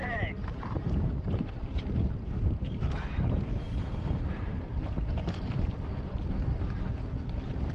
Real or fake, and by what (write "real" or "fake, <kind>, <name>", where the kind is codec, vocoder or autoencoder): fake, vocoder, BigVGAN v2